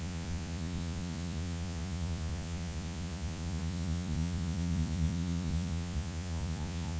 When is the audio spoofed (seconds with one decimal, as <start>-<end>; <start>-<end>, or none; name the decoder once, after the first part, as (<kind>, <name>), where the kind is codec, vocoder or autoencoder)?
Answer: 0.0-7.0 (vocoder, Vocos)